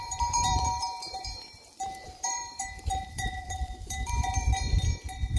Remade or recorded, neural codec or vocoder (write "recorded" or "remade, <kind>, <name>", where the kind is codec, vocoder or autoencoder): remade, vocoder, BigVGAN v2